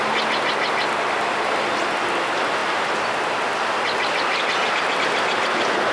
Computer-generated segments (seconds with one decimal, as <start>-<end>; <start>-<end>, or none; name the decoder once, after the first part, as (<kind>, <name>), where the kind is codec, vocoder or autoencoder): none